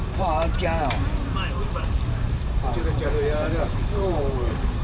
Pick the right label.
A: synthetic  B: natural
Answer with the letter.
A